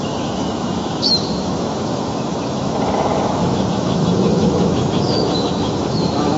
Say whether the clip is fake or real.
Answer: fake